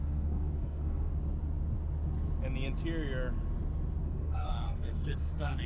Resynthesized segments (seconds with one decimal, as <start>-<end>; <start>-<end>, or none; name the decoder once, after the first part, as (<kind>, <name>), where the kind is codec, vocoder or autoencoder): 0.0-1.1 (codec, SNAC); 4.0-5.7

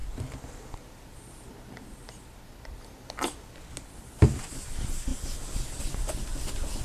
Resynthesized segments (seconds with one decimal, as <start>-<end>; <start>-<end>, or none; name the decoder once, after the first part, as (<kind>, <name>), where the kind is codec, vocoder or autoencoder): none

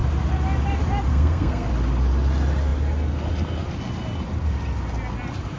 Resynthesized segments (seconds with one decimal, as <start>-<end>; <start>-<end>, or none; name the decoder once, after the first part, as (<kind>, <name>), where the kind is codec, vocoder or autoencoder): 1.1-1.7 (codec, SNAC)

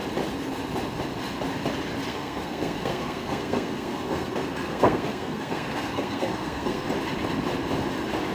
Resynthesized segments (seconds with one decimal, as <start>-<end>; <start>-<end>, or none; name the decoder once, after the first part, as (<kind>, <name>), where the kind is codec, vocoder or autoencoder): 2.1-6.9 (codec, SNAC)

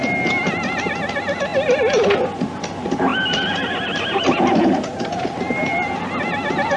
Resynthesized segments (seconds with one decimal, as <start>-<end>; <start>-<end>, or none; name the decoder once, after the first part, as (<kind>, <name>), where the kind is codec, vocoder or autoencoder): none